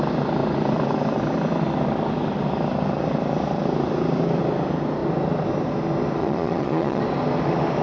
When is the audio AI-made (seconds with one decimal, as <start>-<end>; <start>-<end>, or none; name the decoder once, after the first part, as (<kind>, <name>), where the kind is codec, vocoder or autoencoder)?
6.2-7.0 (vocoder, Vocos)